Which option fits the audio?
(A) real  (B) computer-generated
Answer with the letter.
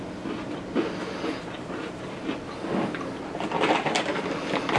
A